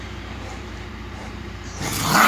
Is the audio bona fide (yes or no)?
no